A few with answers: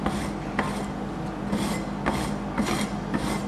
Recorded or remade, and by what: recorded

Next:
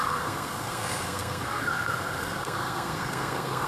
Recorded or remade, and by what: remade, codec, SNAC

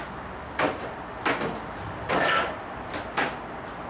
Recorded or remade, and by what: recorded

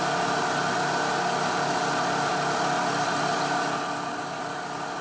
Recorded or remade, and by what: recorded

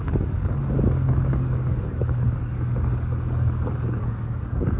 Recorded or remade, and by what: remade, codec, DAC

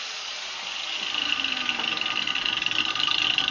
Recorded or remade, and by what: recorded